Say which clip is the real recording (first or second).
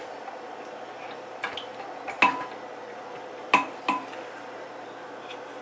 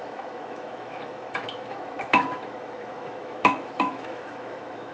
first